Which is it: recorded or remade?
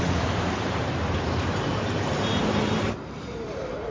remade